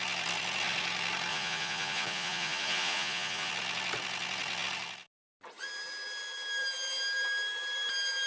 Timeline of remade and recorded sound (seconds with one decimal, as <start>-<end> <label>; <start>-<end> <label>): 0.0-1.3 recorded; 1.3-3.5 remade; 3.5-8.3 recorded